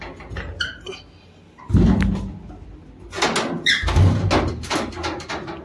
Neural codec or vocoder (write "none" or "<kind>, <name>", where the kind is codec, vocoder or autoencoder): none